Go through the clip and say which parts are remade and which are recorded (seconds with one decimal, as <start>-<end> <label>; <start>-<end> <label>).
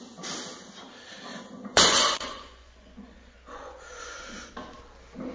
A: 0.0-1.3 recorded; 1.3-4.5 remade; 4.5-5.3 recorded